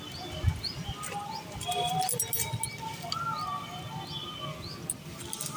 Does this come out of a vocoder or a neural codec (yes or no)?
no